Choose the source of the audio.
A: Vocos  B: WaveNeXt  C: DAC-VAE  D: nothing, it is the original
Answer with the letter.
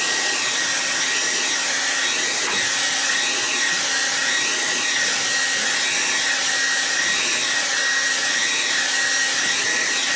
D